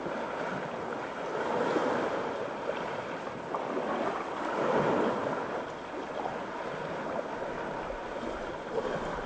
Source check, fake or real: real